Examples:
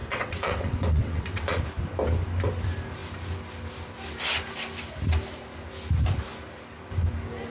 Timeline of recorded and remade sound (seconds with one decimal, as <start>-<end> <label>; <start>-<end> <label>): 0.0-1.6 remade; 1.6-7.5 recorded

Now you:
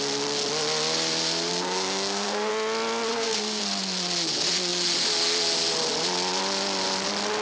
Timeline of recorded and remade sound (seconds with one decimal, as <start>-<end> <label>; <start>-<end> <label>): 0.0-1.5 recorded; 1.5-2.5 remade; 2.5-3.1 recorded; 3.1-3.6 remade; 3.6-7.4 recorded

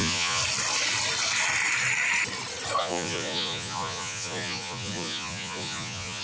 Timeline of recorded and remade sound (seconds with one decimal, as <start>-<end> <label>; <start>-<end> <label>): 0.0-0.4 remade; 0.4-2.8 recorded; 2.8-6.2 remade

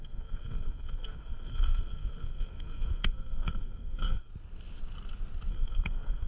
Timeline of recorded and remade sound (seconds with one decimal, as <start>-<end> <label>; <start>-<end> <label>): 0.0-4.3 remade; 4.3-5.5 recorded; 5.5-6.3 remade